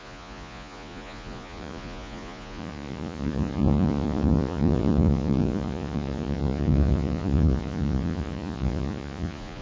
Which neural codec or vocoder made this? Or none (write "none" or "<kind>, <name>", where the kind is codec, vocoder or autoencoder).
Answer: vocoder, Vocos